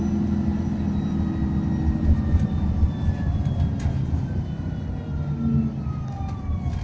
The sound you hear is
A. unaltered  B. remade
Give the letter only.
A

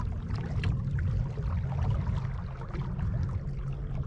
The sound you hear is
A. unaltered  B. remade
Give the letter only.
A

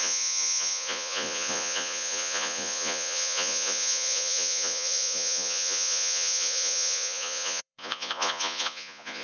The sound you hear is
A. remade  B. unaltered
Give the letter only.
A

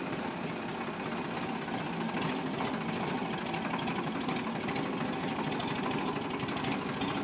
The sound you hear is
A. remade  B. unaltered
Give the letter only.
B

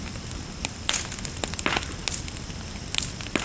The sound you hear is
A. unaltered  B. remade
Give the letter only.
A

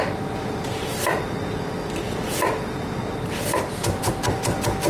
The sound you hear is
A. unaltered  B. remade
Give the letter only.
A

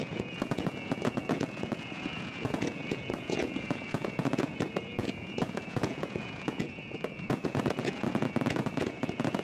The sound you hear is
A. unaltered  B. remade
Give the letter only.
B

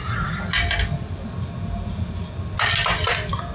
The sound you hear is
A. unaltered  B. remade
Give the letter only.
A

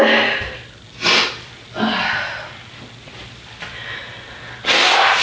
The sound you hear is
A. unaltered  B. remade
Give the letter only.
A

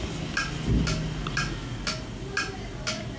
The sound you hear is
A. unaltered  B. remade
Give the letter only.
A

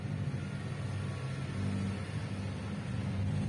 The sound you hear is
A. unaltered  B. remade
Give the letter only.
A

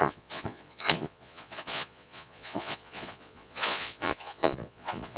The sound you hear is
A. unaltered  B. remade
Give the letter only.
B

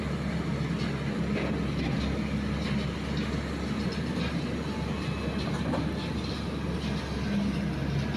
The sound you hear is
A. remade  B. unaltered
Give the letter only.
B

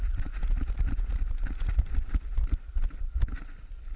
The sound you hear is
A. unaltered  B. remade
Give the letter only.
A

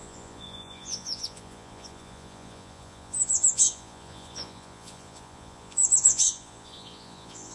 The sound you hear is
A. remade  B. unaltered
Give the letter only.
A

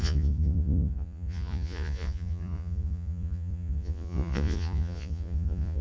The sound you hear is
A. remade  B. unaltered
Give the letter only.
A